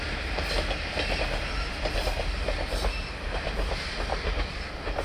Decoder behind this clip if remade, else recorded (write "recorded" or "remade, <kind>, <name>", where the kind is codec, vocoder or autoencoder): recorded